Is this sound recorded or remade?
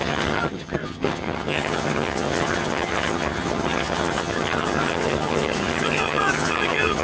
remade